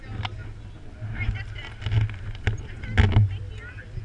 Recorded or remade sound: recorded